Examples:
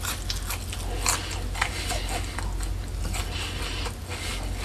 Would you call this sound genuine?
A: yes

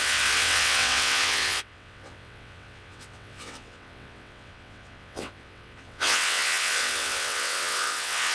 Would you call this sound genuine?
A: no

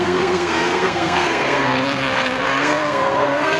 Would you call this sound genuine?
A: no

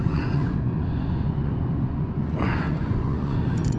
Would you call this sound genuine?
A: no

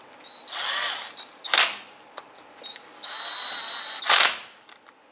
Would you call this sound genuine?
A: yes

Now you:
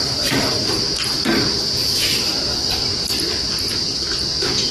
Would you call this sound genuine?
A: yes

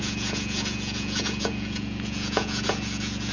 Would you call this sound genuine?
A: no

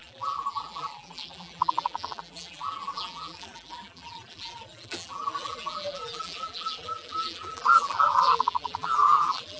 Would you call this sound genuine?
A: no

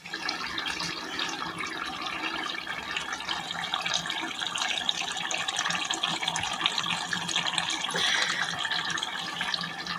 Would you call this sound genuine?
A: yes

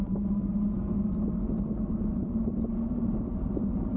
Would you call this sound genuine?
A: yes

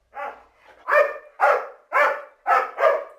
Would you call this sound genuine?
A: yes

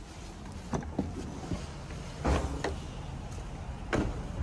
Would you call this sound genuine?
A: yes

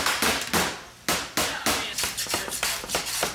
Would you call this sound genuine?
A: yes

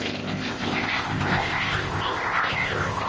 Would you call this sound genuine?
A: no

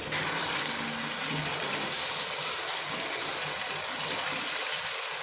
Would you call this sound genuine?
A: yes